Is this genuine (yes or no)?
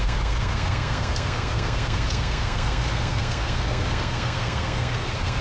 no